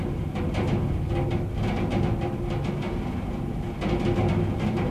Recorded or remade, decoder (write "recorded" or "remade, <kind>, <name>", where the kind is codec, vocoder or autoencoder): recorded